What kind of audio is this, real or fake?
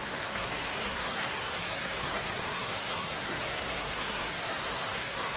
fake